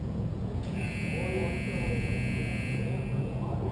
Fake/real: fake